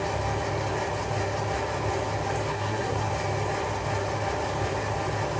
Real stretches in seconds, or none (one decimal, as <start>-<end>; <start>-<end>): 0.0-2.5; 3.1-5.4